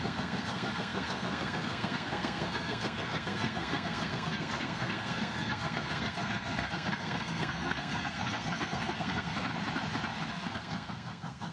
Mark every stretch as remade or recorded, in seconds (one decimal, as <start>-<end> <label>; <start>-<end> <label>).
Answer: 0.0-9.5 remade; 9.5-10.3 recorded; 10.3-11.5 remade